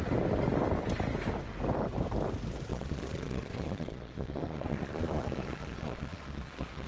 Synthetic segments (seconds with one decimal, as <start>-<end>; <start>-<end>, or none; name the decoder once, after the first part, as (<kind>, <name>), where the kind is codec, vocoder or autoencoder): 2.7-6.9 (vocoder, Vocos)